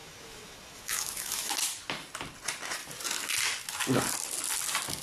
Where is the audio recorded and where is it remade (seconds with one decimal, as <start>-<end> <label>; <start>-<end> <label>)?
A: 0.0-1.5 remade; 1.5-5.0 recorded